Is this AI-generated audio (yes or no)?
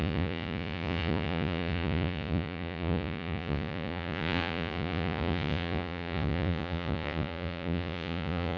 yes